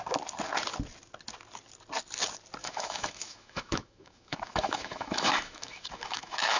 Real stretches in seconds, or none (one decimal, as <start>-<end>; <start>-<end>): 0.0-2.6

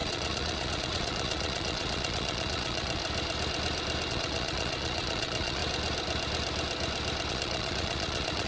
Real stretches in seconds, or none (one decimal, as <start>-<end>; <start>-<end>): 3.0-4.1; 5.6-7.3

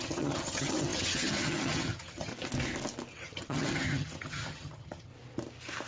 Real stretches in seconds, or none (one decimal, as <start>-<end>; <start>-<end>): 2.3-3.1; 5.1-5.9

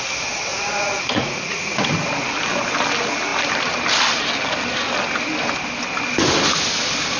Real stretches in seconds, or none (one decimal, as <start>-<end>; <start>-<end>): 0.0-0.5; 1.7-7.2

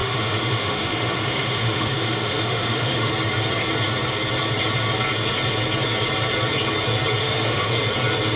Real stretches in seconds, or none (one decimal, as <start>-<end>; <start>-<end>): 3.1-7.2; 7.8-8.4

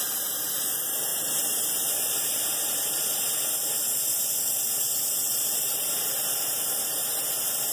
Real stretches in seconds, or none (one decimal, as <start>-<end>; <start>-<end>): 0.0-1.1; 3.1-4.7; 6.0-7.7

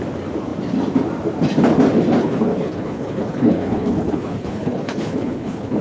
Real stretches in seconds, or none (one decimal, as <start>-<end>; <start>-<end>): 0.0-2.2

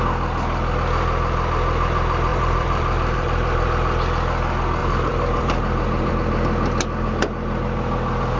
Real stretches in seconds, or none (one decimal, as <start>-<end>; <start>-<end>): 0.0-2.3; 3.7-4.8; 6.1-8.4